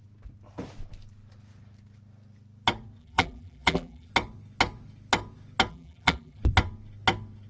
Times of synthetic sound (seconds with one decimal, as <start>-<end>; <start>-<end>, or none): 3.0-4.1; 5.7-6.4